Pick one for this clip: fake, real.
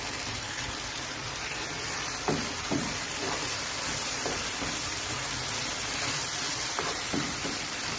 fake